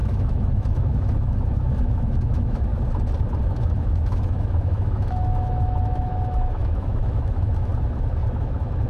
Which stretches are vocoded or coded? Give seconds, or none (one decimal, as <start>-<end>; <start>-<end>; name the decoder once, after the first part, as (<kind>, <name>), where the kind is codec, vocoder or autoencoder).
0.0-2.7 (autoencoder, DAC-VAE); 3.4-7.7; 8.4-8.9